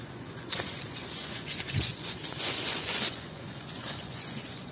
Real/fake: fake